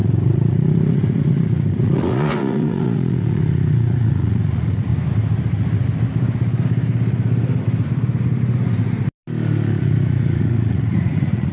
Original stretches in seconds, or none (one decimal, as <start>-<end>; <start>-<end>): 4.9-9.8